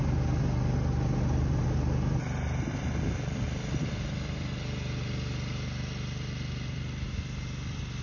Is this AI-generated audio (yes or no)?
no